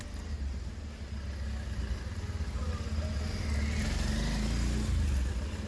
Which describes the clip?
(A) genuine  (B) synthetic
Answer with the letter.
A